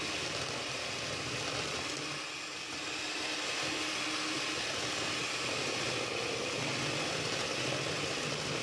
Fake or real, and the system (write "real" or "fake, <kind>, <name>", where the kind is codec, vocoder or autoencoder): real